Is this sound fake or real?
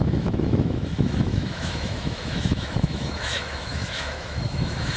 fake